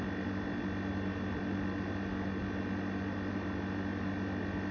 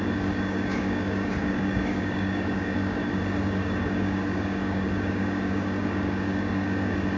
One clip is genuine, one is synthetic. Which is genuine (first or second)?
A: first